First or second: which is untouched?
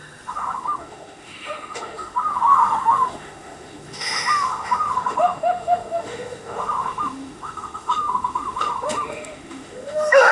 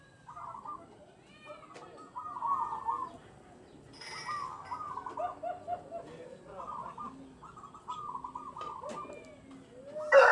second